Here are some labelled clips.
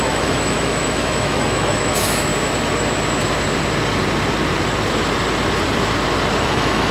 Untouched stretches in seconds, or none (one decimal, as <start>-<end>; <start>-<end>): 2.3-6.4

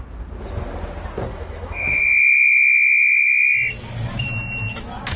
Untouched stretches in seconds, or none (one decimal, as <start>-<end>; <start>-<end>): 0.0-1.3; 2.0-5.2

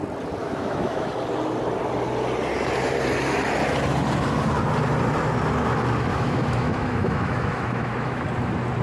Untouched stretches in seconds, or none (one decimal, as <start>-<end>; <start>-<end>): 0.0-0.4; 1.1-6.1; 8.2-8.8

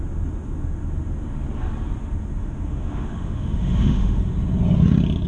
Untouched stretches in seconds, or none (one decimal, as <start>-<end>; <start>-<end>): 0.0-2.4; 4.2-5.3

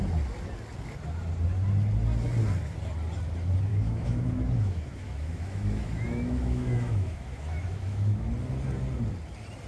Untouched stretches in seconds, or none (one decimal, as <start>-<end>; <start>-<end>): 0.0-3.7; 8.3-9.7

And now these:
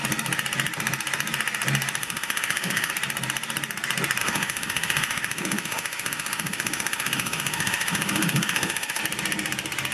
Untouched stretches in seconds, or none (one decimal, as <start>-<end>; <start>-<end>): 0.0-2.0; 2.9-4.2; 9.0-9.9